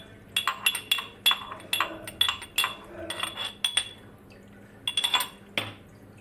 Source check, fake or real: real